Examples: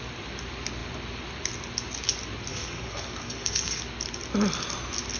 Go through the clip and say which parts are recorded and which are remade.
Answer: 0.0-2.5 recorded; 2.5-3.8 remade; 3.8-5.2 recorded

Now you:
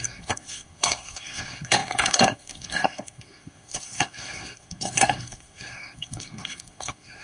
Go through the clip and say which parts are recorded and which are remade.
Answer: 0.0-7.2 remade

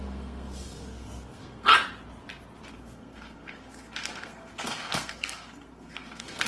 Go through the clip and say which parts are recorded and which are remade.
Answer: 0.0-1.7 remade; 1.7-2.7 recorded; 2.7-6.5 remade

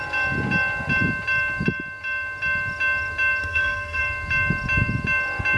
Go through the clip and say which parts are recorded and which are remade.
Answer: 0.0-3.4 recorded; 3.4-4.0 remade; 4.0-5.6 recorded

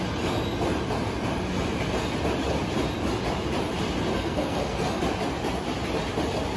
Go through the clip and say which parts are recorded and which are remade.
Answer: 0.0-4.1 recorded; 4.1-5.0 remade; 5.0-6.6 recorded